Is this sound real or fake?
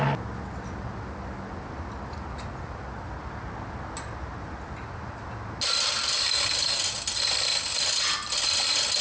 real